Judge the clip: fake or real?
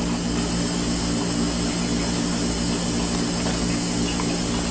real